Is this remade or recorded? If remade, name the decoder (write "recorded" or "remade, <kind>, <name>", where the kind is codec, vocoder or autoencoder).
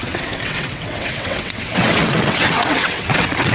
remade, vocoder, WaveNeXt